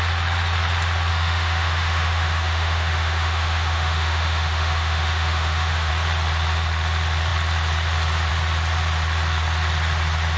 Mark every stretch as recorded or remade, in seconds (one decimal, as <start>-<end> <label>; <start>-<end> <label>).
0.0-1.1 recorded; 1.1-5.9 remade; 5.9-10.4 recorded